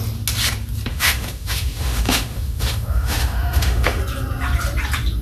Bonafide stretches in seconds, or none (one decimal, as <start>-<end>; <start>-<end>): 0.0-0.9; 4.0-5.2